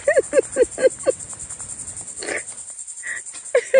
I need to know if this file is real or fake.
real